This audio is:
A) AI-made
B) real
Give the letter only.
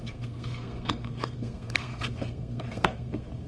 A